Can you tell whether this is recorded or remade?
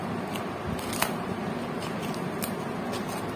recorded